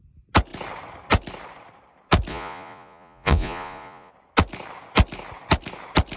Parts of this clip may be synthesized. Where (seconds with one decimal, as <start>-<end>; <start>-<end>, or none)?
2.3-4.1